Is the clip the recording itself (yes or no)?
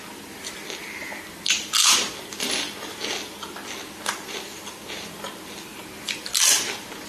yes